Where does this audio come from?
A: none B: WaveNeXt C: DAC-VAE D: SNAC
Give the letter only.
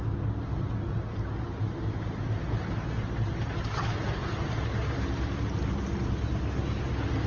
A